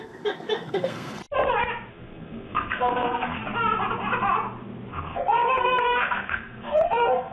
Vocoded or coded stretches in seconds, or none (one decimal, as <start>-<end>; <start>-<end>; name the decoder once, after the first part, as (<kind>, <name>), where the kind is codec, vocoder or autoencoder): 0.0-1.2 (codec, SNAC); 1.9-3.4; 4.9-7.3